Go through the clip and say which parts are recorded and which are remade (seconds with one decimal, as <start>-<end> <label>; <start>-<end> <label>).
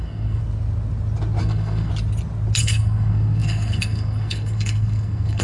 0.0-0.4 remade; 0.4-1.4 recorded; 1.4-1.9 remade; 1.9-2.6 recorded; 2.6-5.4 remade